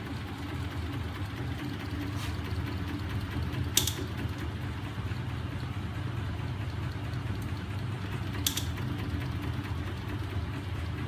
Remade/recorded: recorded